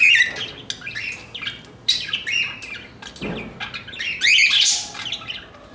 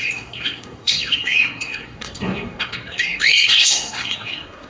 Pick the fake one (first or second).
second